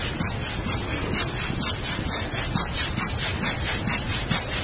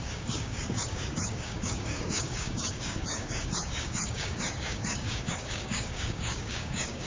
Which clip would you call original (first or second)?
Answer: first